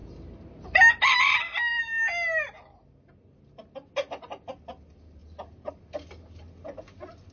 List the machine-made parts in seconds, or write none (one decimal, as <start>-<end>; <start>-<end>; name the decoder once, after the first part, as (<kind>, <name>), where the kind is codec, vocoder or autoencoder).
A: none

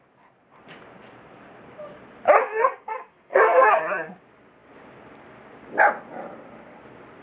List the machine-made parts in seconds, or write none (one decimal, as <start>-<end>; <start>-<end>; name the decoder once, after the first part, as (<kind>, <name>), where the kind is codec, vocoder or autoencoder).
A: 2.4-3.8 (codec, SNAC)